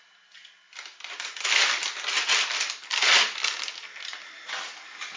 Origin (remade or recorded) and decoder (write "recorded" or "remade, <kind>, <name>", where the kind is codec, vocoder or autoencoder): recorded